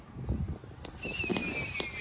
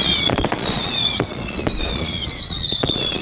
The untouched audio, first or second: first